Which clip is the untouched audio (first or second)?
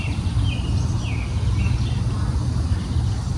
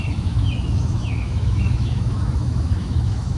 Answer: first